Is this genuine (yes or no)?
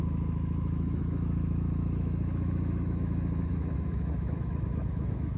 no